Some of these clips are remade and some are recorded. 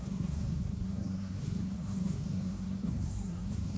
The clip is remade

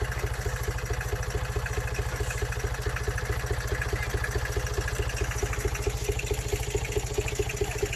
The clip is recorded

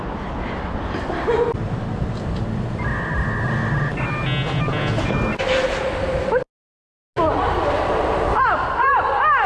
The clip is recorded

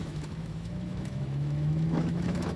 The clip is remade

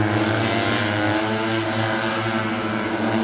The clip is recorded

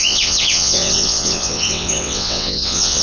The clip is remade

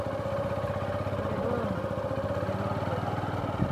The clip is recorded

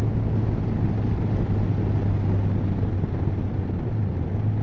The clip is recorded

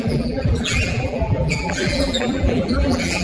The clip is remade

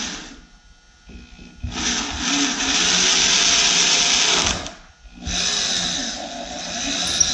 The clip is recorded